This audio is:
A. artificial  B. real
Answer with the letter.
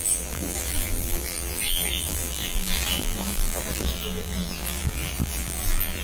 A